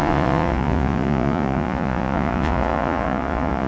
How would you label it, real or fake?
fake